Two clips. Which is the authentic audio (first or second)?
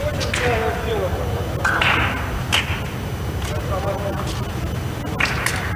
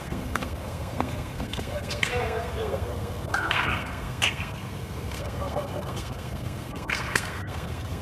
first